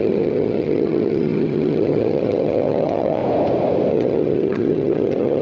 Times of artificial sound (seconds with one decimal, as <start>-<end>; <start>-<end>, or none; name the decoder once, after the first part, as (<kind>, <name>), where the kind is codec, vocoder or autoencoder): 0.0-3.2 (vocoder, HiFi-GAN); 3.9-5.4